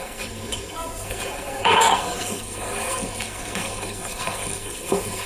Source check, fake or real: fake